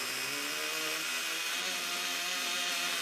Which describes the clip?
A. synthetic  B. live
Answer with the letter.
B